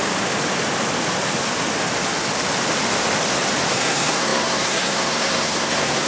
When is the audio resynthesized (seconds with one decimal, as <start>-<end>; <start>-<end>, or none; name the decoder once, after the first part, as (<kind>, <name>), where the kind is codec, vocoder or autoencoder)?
3.7-6.1 (codec, SNAC)